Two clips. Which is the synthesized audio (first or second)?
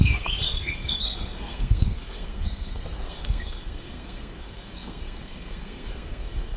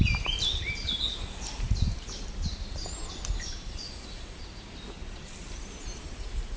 first